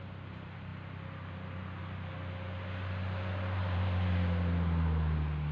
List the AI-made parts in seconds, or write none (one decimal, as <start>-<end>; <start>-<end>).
none